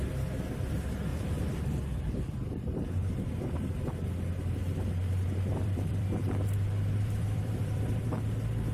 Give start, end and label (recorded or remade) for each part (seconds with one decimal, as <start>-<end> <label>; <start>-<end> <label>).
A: 0.0-1.1 recorded; 1.1-3.1 remade; 3.1-4.6 recorded; 4.6-8.7 remade